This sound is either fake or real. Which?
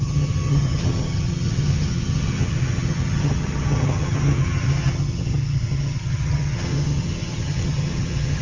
fake